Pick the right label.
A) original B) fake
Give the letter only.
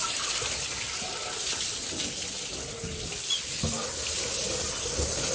A